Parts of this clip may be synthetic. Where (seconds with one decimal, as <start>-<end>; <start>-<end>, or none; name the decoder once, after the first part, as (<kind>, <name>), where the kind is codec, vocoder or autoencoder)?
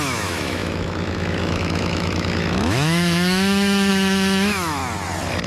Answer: 0.0-4.8 (autoencoder, DAC-VAE)